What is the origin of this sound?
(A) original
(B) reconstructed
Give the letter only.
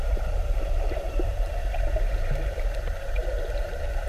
B